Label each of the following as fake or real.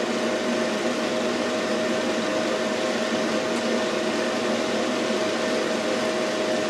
real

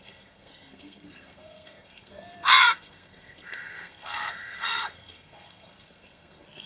fake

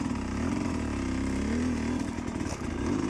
real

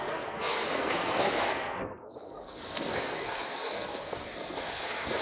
fake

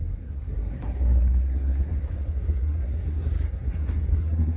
fake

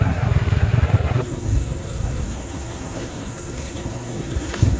fake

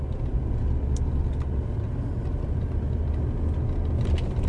real